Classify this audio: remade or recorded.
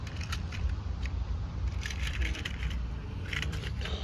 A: remade